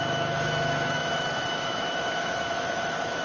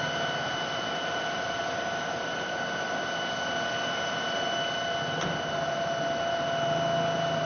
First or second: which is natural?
second